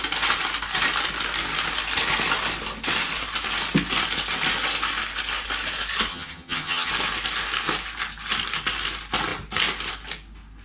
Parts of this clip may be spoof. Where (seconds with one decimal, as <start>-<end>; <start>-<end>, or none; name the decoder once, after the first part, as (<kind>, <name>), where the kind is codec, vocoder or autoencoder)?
6.1-6.9 (vocoder, HiFi-GAN)